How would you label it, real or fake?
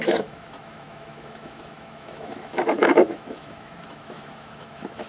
fake